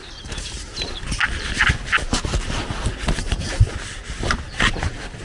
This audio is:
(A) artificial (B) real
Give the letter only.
B